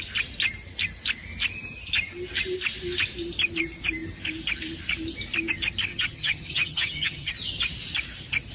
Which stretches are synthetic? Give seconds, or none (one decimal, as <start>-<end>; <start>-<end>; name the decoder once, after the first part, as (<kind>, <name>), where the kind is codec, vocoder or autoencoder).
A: 5.9-7.3 (vocoder, HiFi-GAN)

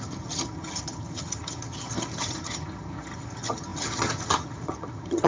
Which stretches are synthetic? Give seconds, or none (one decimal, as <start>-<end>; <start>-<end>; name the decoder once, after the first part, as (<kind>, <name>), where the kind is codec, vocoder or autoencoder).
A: 0.0-5.3 (vocoder, HiFi-GAN)

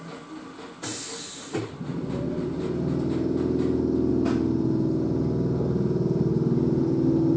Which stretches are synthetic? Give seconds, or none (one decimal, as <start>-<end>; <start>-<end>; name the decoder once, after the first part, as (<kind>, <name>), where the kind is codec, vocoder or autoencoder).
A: none

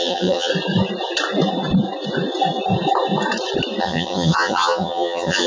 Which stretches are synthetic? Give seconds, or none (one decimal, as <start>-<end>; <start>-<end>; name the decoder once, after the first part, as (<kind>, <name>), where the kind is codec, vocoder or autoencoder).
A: 0.0-0.5 (vocoder, HiFi-GAN); 3.8-5.5

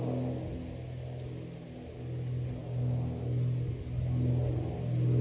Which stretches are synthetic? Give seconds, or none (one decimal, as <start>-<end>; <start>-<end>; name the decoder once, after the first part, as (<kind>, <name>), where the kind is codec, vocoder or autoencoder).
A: none

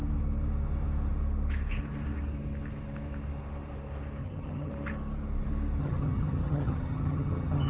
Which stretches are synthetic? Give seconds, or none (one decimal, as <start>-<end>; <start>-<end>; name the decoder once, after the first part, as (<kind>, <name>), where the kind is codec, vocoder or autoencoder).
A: 4.2-4.7 (vocoder, HiFi-GAN); 5.8-7.7

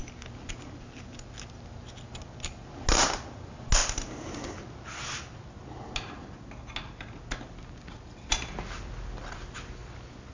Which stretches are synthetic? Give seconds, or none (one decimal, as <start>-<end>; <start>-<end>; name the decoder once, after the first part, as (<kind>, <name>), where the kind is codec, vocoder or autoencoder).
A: none